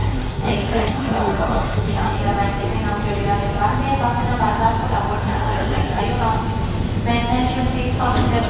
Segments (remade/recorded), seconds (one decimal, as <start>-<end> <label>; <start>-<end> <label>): 0.0-2.2 remade; 2.2-5.2 recorded; 5.2-6.0 remade; 6.0-8.5 recorded